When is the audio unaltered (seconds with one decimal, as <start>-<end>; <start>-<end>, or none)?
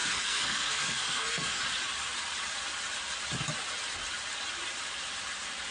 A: 1.6-5.7